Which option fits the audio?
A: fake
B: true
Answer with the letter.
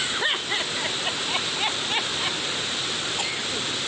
B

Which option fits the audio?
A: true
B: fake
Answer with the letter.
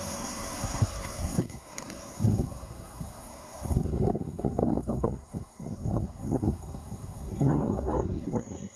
B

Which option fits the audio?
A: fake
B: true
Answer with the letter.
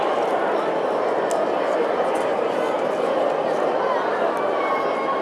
B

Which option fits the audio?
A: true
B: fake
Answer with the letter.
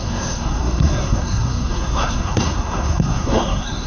B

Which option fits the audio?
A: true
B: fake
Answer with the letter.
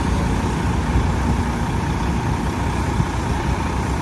A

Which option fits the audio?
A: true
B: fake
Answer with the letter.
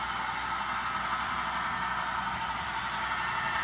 A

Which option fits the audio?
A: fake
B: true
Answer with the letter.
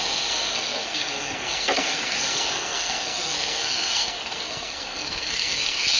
A